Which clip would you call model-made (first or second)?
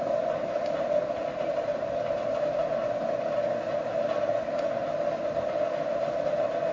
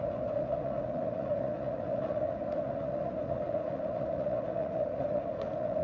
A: second